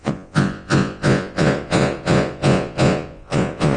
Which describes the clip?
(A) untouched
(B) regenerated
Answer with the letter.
B